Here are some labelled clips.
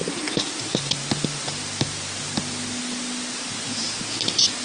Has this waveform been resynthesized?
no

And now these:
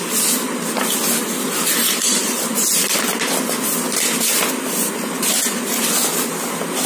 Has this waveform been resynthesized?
no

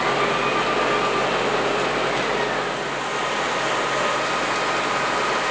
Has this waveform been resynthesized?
no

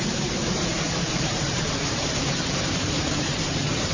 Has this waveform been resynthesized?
yes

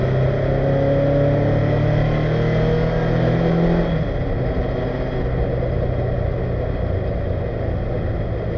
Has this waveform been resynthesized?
no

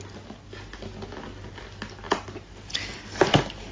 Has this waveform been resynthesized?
no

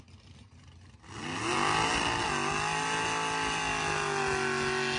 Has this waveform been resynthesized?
no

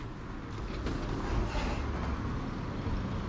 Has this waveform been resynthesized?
no